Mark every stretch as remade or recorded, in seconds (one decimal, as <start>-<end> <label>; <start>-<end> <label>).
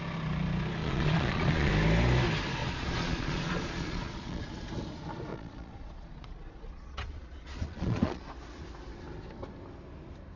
0.0-0.8 recorded; 0.8-1.7 remade; 1.7-2.6 recorded; 2.6-4.4 remade; 4.4-5.3 recorded; 5.3-8.2 remade; 8.2-10.4 recorded